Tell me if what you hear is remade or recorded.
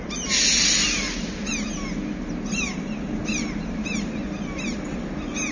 recorded